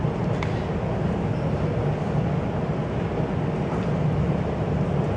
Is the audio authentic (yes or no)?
yes